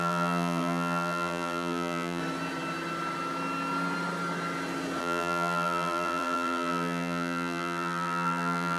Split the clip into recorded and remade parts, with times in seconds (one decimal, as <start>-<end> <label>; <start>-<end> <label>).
0.0-2.2 remade; 2.2-5.0 recorded; 5.0-8.8 remade